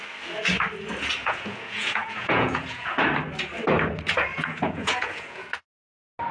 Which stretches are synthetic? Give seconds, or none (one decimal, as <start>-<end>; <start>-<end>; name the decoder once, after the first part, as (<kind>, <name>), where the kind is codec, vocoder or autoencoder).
1.2-3.0 (vocoder, Vocos); 4.3-5.5